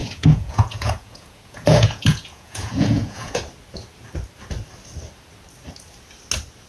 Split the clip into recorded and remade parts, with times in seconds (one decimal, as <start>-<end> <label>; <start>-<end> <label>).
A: 0.0-3.4 remade; 3.4-6.7 recorded